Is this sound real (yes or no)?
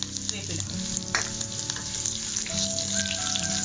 yes